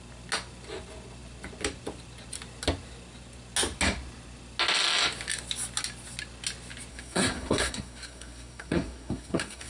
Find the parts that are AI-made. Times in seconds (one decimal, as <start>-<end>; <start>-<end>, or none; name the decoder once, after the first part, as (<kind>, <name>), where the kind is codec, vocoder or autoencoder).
6.9-9.7 (codec, SNAC)